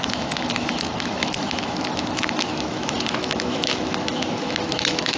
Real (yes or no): no